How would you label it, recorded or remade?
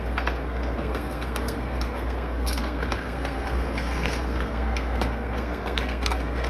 remade